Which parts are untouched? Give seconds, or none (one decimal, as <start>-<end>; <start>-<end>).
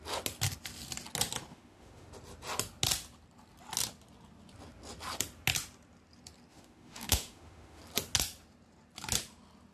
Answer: 0.0-1.5; 2.1-6.5; 7.8-9.7